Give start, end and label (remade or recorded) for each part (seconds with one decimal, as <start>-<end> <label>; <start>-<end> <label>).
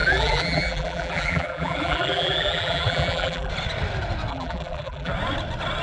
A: 0.0-3.5 remade; 3.5-4.3 recorded; 4.3-5.1 remade; 5.1-5.8 recorded